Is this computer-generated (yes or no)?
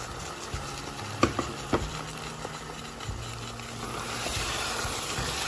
no